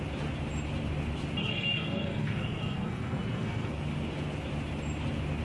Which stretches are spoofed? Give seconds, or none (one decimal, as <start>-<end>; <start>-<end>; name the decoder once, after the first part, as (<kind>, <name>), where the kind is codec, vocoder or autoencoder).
1.4-3.8 (codec, SNAC)